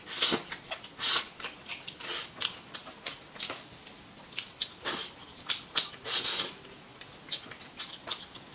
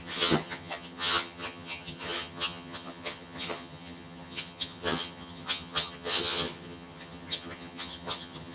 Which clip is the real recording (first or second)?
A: first